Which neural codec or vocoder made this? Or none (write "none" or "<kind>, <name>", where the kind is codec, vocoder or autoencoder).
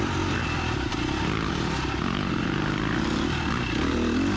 none